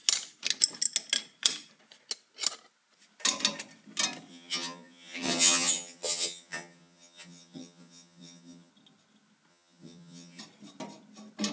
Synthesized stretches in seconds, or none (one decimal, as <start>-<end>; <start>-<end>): 4.3-8.7; 9.5-10.4